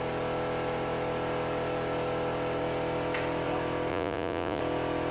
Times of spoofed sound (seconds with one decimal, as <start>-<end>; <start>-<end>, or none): 3.9-4.6

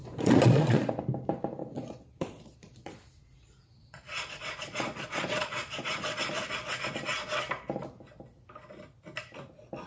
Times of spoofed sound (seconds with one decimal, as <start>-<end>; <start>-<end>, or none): 0.0-1.0; 1.6-6.2

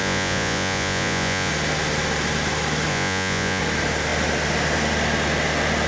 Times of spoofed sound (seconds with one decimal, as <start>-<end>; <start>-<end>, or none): 0.0-1.5; 2.9-3.6

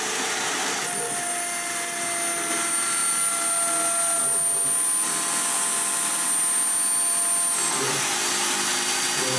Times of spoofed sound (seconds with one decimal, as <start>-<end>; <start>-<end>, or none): none